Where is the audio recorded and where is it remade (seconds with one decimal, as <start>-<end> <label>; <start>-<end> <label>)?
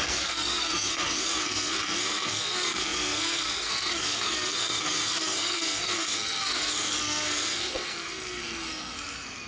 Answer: 0.0-9.5 remade